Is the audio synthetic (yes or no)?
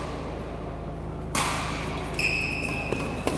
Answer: no